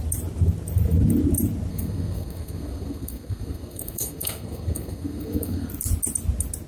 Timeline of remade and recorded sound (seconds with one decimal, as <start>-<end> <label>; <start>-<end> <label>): 0.0-1.7 recorded; 1.7-5.7 remade; 5.7-6.7 recorded